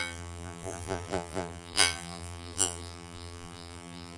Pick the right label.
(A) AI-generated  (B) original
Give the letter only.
A